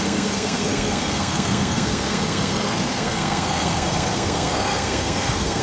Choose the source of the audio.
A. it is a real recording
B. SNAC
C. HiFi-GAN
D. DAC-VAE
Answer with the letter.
B